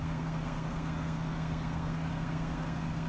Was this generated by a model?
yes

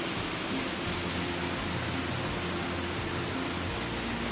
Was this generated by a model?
no